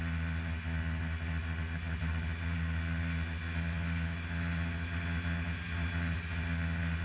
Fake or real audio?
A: real